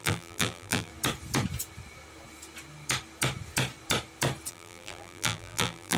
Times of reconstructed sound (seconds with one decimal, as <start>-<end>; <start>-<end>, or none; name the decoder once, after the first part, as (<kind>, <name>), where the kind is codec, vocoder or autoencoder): 0.0-0.9 (vocoder, BigVGAN v2); 4.5-6.0